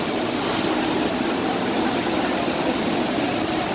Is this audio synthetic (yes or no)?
no